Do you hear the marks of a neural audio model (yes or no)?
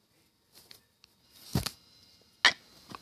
no